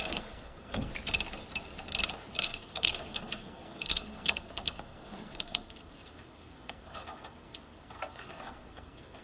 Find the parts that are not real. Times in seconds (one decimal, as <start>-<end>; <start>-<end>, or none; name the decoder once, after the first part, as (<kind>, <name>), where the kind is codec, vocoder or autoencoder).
0.0-0.9 (codec, SNAC); 2.4-9.2